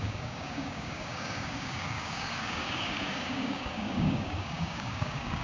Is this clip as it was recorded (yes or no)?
no